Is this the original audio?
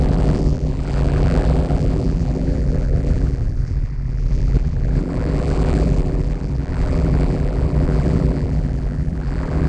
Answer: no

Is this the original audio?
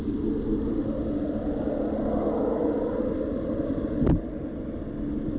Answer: yes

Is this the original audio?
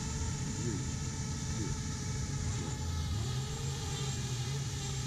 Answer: yes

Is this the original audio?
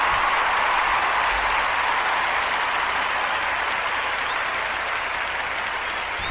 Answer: yes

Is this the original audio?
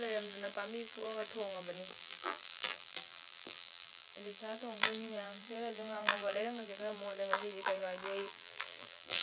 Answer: no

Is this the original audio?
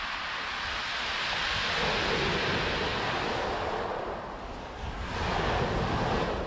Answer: yes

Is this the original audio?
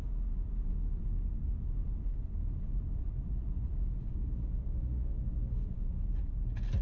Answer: yes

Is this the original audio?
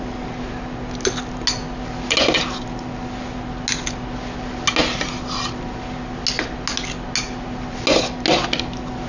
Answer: yes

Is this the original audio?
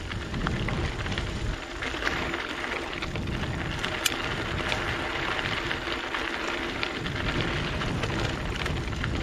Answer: yes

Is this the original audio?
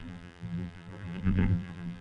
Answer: no